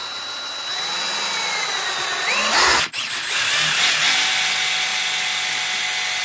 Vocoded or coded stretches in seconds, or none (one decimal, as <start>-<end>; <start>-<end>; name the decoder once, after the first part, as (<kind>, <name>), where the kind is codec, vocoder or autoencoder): none